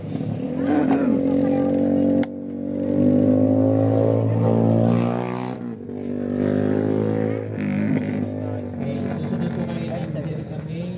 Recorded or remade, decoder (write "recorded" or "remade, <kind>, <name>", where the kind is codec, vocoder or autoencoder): recorded